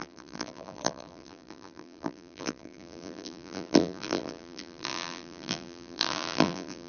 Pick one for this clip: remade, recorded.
remade